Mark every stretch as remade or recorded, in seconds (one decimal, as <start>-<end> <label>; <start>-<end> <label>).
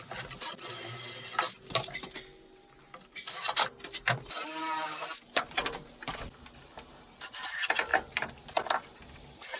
0.0-9.6 recorded